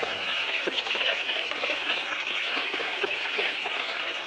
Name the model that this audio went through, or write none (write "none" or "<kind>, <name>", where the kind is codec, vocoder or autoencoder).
codec, SNAC